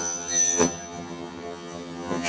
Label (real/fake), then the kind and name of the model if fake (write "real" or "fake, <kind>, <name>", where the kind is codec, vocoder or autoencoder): fake, vocoder, HiFi-GAN